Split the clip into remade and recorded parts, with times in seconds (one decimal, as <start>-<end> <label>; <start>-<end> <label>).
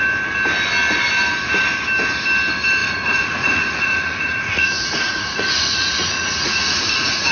0.0-2.8 recorded; 2.8-7.3 remade